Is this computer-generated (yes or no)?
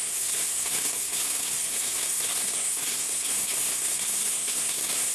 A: yes